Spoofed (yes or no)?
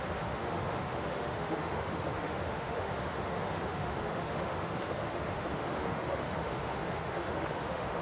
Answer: yes